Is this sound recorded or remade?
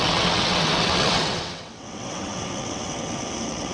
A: remade